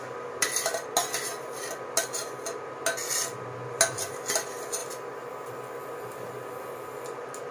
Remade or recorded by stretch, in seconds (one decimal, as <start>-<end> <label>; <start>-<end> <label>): 0.0-7.5 recorded